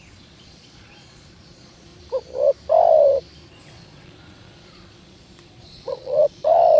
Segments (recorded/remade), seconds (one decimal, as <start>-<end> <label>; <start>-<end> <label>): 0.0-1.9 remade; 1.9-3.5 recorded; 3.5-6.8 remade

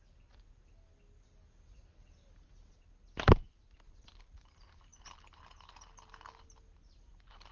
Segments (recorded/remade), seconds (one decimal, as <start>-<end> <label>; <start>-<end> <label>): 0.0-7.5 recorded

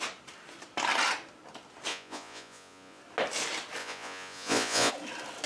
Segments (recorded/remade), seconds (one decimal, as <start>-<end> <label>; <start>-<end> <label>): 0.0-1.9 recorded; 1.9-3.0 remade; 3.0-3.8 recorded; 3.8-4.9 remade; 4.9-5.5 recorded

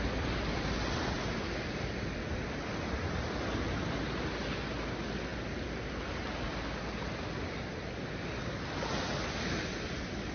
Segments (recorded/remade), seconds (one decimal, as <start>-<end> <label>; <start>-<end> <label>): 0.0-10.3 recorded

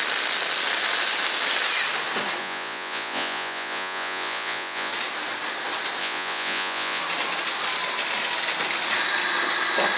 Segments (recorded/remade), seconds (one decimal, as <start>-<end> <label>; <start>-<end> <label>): 0.0-2.4 recorded; 2.4-4.9 remade; 4.9-6.0 recorded; 6.0-7.0 remade; 7.0-10.0 recorded

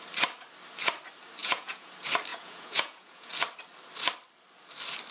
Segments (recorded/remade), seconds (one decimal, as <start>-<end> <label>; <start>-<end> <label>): 0.0-1.4 recorded; 1.4-1.9 remade; 1.9-2.3 recorded; 2.3-3.3 remade; 3.3-5.1 recorded